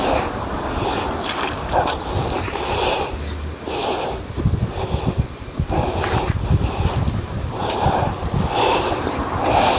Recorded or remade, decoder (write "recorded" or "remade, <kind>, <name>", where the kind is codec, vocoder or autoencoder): recorded